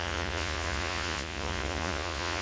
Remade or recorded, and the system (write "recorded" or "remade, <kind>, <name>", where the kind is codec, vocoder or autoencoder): remade, vocoder, Vocos